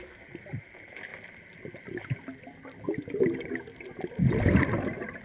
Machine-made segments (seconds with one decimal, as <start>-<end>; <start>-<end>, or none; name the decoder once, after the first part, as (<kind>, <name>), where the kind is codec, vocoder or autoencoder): none